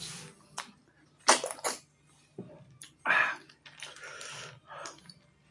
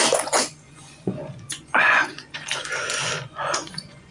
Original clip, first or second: first